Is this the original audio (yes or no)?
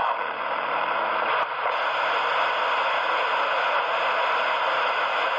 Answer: no